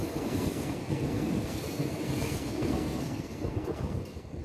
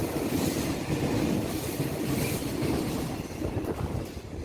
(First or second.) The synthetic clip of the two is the first